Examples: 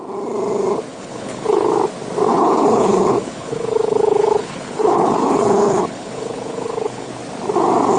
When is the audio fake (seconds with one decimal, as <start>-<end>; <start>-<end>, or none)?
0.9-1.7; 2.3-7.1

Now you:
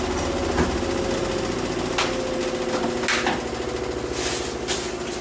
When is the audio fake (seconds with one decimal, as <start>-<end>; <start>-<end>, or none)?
none

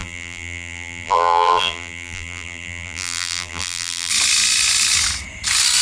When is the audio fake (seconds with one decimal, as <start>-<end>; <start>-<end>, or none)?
0.0-4.1